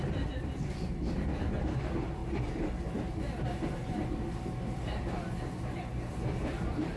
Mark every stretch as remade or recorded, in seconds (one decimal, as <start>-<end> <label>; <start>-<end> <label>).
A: 0.0-1.3 remade; 1.3-1.8 recorded; 1.8-2.2 remade; 2.2-6.4 recorded; 6.4-7.0 remade